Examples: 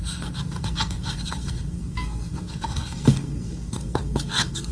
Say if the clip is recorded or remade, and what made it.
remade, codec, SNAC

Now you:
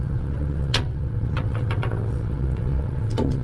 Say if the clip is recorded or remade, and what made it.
remade, vocoder, WaveNeXt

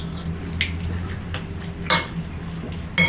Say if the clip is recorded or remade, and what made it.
recorded